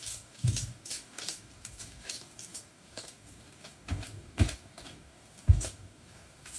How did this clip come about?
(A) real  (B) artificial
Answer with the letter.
B